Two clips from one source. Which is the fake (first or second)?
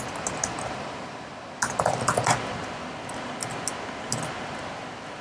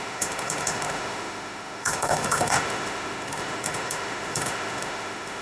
second